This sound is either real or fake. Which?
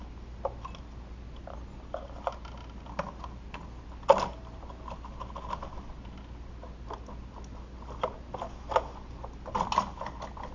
real